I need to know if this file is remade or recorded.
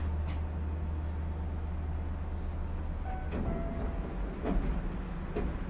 recorded